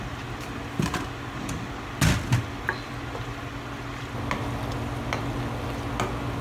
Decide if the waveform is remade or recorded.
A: recorded